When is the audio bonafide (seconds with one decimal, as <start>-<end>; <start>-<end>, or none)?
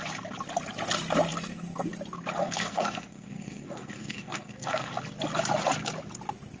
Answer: 0.0-1.3; 1.9-2.4; 4.9-6.6